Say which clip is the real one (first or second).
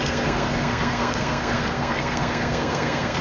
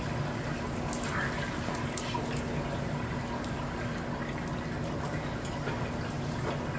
second